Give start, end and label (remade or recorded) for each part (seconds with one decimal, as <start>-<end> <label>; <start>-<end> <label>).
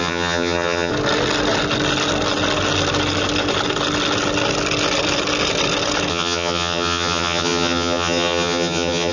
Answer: 0.0-0.9 remade; 0.9-6.1 recorded; 6.1-9.1 remade